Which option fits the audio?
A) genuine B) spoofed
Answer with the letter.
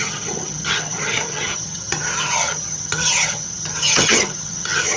B